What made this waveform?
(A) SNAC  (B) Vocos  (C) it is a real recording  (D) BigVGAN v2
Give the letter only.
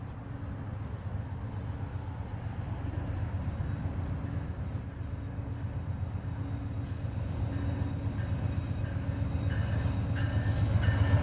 C